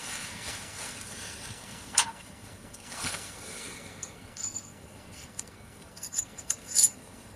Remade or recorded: remade